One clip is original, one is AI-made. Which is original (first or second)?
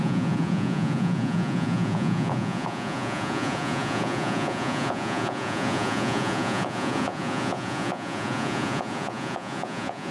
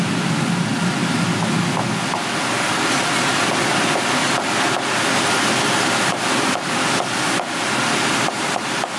second